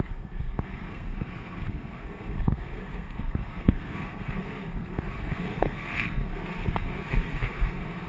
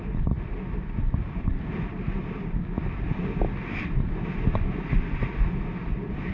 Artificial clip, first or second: first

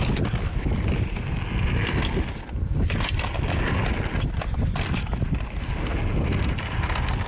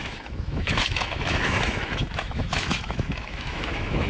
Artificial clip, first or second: second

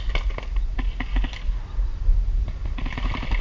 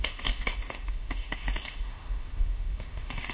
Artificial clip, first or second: second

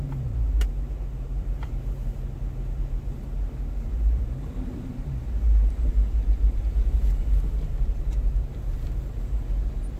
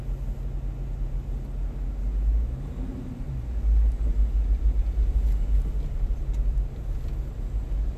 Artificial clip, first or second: first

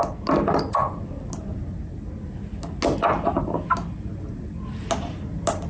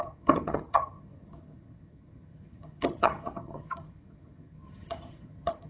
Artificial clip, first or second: second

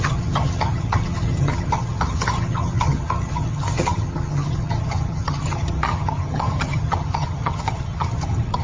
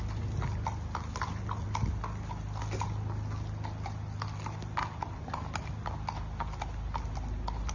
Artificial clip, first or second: first